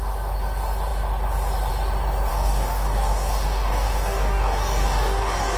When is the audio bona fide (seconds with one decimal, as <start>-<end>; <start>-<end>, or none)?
0.0-2.3